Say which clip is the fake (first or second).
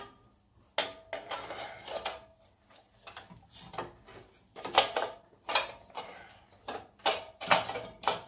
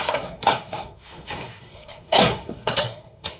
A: second